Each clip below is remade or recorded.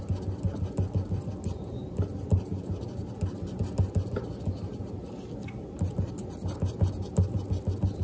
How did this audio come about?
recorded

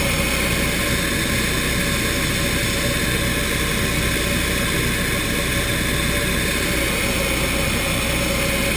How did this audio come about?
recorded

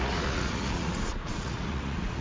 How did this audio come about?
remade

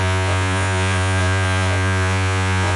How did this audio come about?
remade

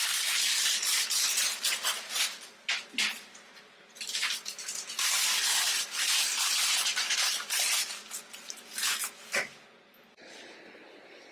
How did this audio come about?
recorded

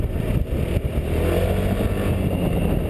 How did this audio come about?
recorded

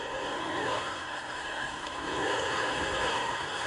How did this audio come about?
remade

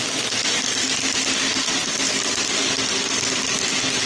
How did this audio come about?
recorded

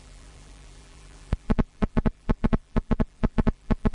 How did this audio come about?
remade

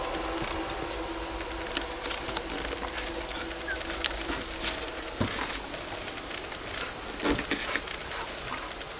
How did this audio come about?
recorded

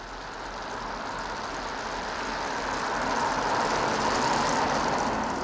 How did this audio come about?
recorded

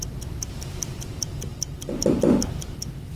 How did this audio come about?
recorded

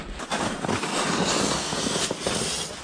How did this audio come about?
recorded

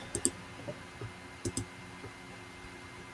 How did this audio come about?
recorded